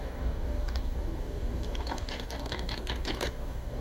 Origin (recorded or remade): remade